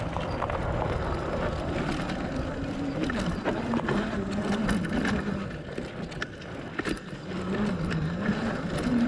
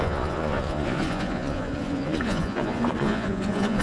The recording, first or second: first